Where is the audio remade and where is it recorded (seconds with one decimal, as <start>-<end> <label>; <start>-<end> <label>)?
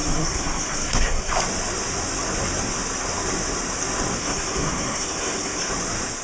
0.0-1.3 remade; 1.3-4.2 recorded; 4.2-5.7 remade; 5.7-6.2 recorded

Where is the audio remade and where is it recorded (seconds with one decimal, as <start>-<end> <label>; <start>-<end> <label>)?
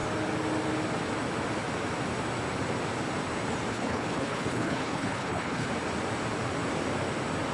0.0-3.7 recorded; 3.7-5.7 remade; 5.7-7.5 recorded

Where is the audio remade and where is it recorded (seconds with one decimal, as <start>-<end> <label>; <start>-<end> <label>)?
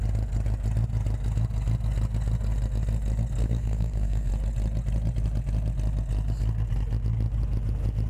0.0-3.4 recorded; 3.4-4.3 remade; 4.3-8.1 recorded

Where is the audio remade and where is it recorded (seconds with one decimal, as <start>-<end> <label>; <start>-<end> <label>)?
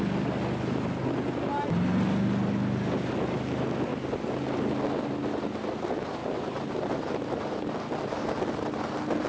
0.0-6.2 recorded; 6.2-7.7 remade; 7.7-9.3 recorded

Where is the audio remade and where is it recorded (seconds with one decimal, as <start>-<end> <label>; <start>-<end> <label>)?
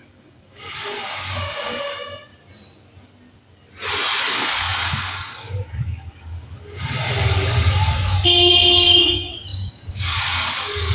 0.0-2.3 remade; 2.3-4.2 recorded; 4.2-10.9 remade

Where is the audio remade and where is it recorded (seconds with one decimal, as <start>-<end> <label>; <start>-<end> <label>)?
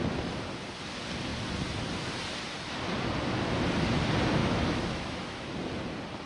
0.0-4.4 recorded; 4.4-5.5 remade; 5.5-6.3 recorded